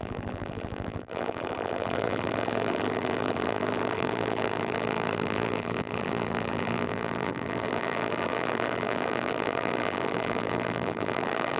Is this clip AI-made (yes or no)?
yes